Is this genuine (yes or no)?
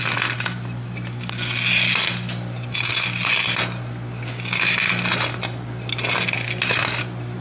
yes